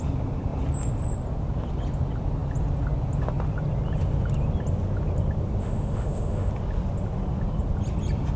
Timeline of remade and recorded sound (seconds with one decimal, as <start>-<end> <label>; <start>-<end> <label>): 0.0-5.6 recorded; 5.6-6.5 remade; 6.5-8.4 recorded